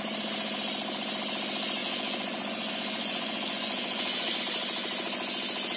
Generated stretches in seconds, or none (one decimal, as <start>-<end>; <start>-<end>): 1.8-4.4